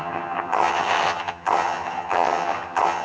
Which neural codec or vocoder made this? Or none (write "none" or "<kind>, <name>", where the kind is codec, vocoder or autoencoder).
vocoder, HiFi-GAN